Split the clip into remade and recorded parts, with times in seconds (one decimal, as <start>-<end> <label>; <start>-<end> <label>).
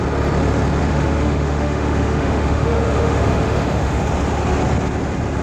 0.0-0.8 recorded; 0.8-4.0 remade; 4.0-5.4 recorded